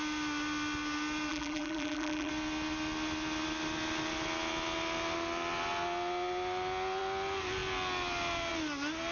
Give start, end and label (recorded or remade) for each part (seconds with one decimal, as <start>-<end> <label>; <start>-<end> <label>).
0.0-1.3 recorded; 1.3-2.3 remade; 2.3-9.1 recorded